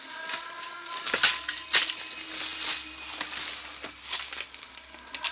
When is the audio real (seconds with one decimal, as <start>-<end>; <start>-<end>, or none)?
0.0-5.3